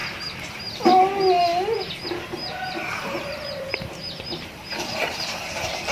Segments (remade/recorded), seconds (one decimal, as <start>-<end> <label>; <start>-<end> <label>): 0.0-1.4 recorded; 1.4-5.9 remade